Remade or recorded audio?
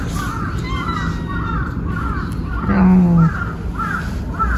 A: recorded